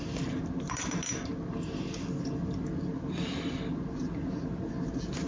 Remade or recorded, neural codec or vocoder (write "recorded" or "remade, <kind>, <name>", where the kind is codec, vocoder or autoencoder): recorded